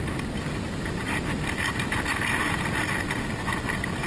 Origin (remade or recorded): recorded